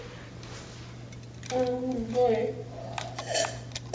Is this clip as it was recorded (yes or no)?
yes